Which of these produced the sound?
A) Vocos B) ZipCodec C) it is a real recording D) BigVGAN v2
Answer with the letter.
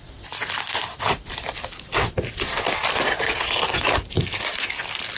C